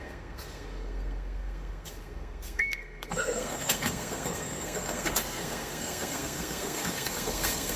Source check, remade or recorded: remade